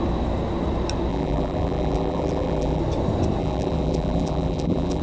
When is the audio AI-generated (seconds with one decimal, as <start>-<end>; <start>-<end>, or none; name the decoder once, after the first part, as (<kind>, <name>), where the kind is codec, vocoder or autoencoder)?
1.1-2.8 (vocoder, BigVGAN v2); 3.4-5.0